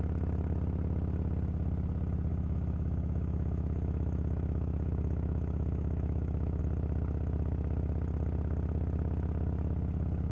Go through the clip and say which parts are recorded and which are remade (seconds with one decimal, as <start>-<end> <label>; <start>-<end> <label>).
0.0-2.3 recorded; 2.3-6.6 remade; 6.6-10.3 recorded